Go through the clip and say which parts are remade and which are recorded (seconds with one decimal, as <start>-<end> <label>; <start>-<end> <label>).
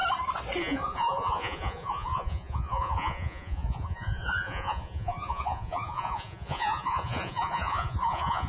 0.0-0.6 recorded; 0.6-8.5 remade